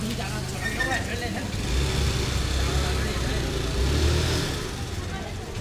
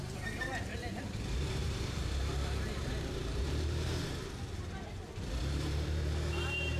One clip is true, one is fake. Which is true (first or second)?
first